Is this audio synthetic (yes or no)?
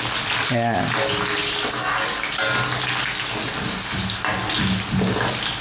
no